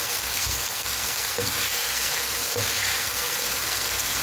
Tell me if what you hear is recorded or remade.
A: remade